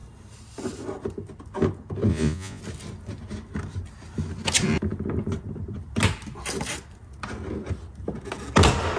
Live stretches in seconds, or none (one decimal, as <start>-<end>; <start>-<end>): 0.0-2.1; 2.6-9.0